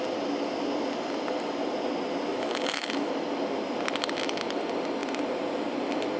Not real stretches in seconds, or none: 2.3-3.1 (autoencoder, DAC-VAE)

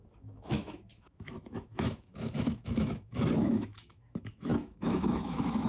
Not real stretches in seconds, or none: 0.0-5.7 (autoencoder, DAC-VAE)